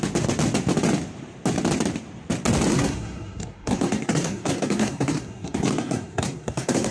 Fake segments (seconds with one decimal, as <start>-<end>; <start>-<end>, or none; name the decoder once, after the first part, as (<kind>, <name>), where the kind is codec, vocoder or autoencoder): 2.7-6.9 (codec, SNAC)